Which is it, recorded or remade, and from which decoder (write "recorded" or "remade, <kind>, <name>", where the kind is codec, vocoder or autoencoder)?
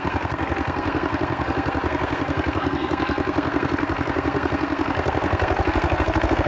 remade, codec, SNAC